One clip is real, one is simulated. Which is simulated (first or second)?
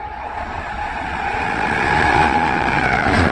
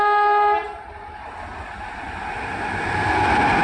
first